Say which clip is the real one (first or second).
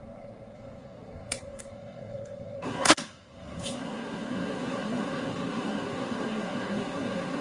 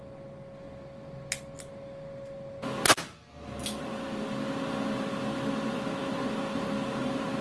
second